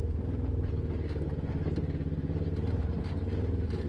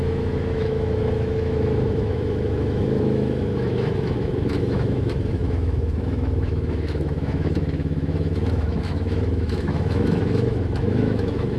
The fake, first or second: second